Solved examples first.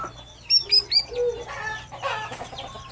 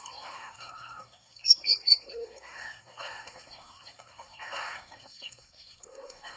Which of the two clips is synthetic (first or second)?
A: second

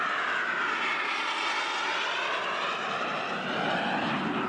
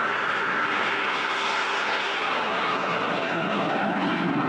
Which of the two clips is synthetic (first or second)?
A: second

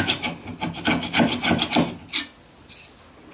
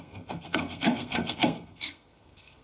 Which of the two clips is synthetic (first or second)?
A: second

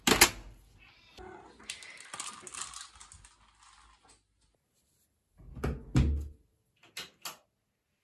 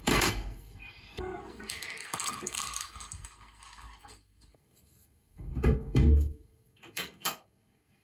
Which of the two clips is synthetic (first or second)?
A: second